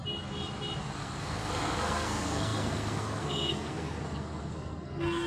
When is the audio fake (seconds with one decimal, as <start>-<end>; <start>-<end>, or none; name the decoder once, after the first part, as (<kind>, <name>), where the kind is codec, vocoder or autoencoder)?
0.8-5.3 (codec, SNAC)

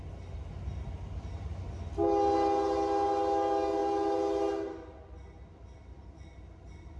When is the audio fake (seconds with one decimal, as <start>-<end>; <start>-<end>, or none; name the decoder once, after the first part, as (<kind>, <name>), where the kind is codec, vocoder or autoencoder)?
none

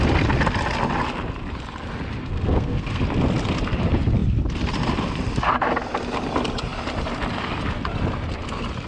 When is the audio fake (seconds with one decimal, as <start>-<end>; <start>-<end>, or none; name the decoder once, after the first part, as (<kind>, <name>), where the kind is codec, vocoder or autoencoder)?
2.2-3.0 (codec, SNAC)

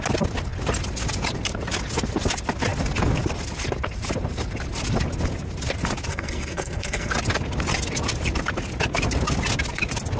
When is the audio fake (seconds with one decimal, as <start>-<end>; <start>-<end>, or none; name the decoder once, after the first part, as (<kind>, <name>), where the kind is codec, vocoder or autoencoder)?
6.1-7.1 (codec, SNAC)

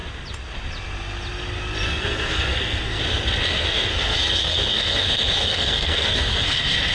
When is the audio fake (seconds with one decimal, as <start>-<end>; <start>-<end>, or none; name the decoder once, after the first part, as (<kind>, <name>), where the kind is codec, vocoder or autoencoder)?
1.9-3.0 (codec, SNAC); 3.4-6.9

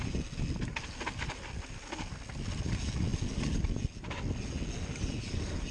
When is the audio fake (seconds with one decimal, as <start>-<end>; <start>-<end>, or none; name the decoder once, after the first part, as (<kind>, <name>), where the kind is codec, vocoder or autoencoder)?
none

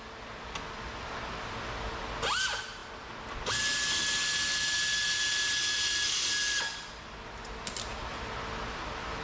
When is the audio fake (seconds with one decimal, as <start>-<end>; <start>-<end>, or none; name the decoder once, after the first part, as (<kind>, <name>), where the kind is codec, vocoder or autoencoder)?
none

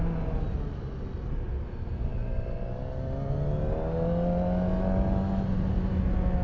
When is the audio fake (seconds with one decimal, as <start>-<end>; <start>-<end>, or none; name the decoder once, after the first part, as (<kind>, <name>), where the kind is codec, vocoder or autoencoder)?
none